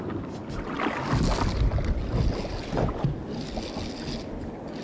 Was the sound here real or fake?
real